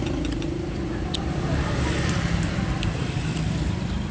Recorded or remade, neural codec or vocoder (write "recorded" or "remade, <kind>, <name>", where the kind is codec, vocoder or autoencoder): recorded